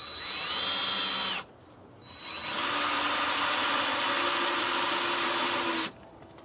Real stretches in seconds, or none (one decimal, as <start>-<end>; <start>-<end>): 0.0-6.4